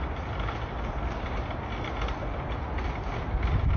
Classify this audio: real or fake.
real